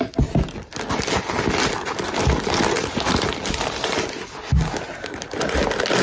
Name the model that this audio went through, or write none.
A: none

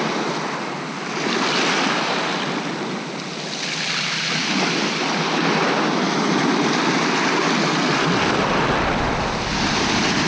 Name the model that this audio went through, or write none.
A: none